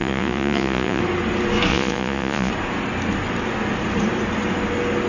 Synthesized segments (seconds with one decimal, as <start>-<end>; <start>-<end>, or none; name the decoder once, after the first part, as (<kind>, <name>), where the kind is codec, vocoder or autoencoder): 0.0-1.0 (vocoder, Vocos); 1.7-2.5

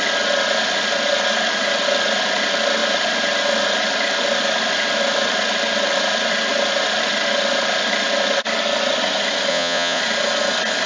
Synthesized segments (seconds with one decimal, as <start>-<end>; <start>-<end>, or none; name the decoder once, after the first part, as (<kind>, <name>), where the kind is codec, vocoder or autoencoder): 9.5-10.0 (vocoder, Vocos)

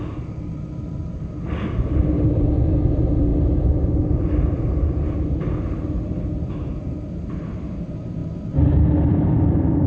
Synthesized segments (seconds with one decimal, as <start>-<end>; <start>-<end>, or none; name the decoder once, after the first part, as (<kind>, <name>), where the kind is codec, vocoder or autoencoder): none

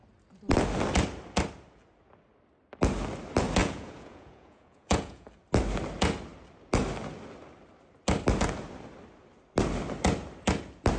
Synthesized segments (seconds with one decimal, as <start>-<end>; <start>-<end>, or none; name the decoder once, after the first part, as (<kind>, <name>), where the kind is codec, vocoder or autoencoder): 3.6-5.3 (vocoder, Vocos)

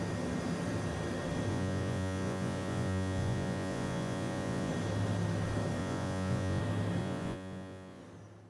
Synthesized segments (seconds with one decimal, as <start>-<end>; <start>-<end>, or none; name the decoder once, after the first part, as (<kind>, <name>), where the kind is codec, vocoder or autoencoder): 1.5-4.7 (vocoder, Vocos); 5.8-6.6; 7.0-8.0

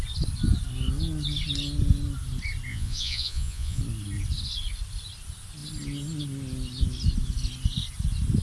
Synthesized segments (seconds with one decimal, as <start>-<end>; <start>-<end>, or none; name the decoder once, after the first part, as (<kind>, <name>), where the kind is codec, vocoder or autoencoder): 2.7-3.8 (vocoder, Vocos)